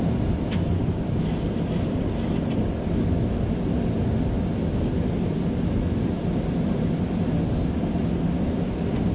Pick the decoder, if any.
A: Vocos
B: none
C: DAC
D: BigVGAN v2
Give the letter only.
B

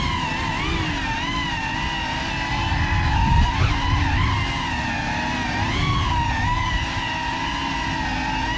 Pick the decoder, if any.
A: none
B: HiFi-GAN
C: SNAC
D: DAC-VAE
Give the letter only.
A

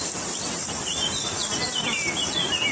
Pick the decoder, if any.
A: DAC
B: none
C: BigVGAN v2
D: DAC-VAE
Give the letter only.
C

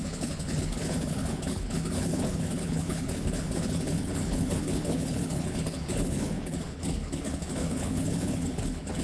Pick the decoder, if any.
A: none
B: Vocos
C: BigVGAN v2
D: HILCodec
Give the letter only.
D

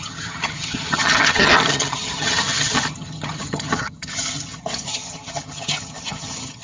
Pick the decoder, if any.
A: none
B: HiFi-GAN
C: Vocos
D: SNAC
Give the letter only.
B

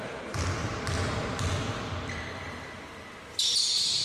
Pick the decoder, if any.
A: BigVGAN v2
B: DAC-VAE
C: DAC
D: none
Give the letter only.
D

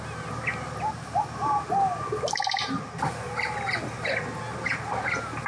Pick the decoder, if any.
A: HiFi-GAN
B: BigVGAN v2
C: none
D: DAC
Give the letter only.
C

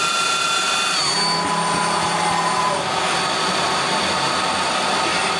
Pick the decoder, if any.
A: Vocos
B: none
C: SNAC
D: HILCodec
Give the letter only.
B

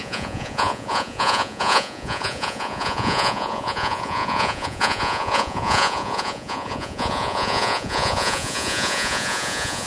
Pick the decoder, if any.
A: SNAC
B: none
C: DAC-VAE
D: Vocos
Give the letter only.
D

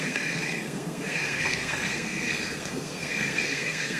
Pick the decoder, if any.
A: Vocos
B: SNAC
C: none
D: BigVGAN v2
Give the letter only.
B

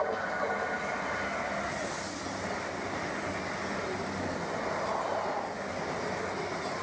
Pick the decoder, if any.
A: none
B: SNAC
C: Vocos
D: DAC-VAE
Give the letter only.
A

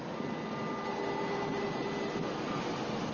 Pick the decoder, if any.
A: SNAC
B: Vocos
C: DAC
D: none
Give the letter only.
D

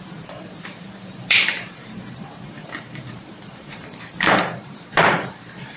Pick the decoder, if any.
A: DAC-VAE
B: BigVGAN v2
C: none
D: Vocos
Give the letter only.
B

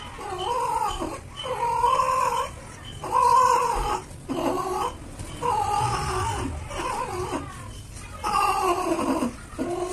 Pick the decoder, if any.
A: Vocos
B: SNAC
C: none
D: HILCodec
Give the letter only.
C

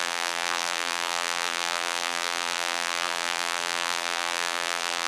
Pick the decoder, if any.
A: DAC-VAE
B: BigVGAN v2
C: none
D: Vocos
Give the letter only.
B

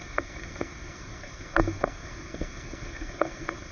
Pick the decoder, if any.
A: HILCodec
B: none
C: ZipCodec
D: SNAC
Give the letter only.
D